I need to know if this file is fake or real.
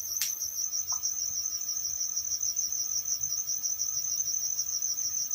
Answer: real